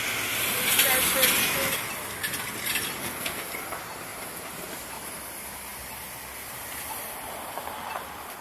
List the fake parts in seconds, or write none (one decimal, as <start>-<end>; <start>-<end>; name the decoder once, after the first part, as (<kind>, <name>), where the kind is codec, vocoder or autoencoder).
3.0-3.5 (codec, SNAC)